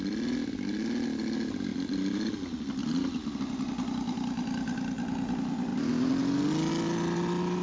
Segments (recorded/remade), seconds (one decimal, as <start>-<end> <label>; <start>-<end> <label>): 0.0-1.7 recorded; 1.7-2.3 remade; 2.3-5.7 recorded; 5.7-6.5 remade; 6.5-7.6 recorded